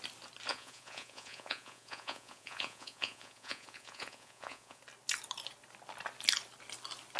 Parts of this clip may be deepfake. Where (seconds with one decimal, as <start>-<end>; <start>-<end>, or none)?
0.5-4.8

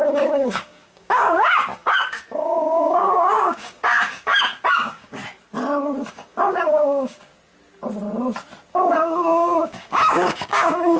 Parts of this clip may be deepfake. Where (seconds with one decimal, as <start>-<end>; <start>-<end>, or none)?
0.0-5.2; 6.1-7.3; 8.7-11.0

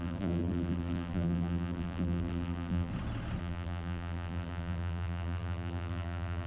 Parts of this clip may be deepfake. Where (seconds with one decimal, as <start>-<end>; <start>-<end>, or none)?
0.0-2.9; 3.4-6.5

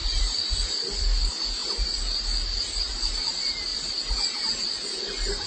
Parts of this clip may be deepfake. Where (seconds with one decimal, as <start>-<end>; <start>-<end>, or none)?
1.6-3.2; 3.7-5.0

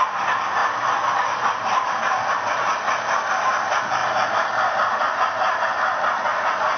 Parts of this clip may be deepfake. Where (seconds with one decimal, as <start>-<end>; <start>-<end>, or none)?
0.6-2.3

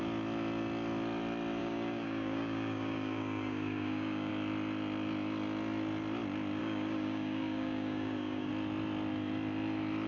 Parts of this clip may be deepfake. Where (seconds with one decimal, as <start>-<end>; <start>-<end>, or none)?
1.6-4.3; 6.6-8.5

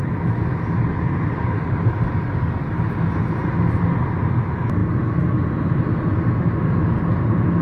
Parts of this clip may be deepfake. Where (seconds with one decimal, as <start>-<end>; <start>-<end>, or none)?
none